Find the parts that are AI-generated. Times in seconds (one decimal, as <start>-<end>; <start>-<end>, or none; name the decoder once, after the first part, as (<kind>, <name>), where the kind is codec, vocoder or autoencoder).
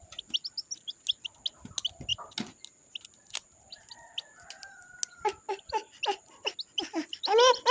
none